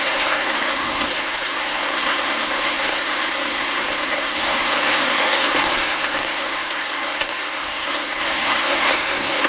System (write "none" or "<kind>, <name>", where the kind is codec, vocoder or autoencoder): codec, SNAC